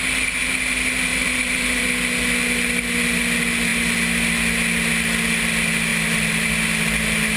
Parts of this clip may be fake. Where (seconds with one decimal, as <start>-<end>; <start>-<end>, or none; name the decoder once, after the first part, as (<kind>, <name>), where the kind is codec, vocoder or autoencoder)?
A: 1.1-1.8 (vocoder, BigVGAN v2); 5.9-6.5